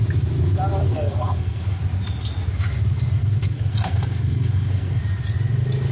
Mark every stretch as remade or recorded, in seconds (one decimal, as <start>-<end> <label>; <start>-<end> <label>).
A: 0.0-0.8 recorded; 0.8-1.8 remade; 1.8-3.2 recorded; 3.2-5.0 remade; 5.0-5.9 recorded